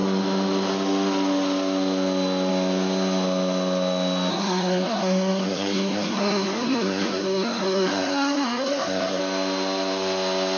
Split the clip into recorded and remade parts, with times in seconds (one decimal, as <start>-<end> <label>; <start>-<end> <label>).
0.0-4.3 recorded; 4.3-9.2 remade; 9.2-10.6 recorded